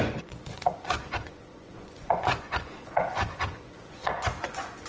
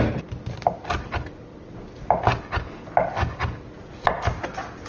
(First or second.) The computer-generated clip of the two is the first